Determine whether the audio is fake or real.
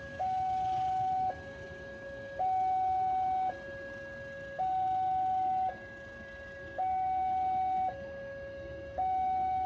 real